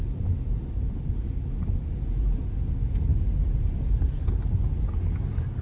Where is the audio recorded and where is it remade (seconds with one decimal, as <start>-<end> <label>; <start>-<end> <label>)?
0.0-5.6 recorded